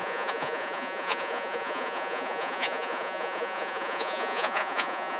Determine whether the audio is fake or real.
fake